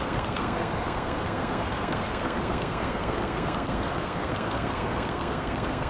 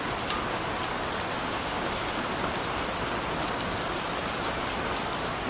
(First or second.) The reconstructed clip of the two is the first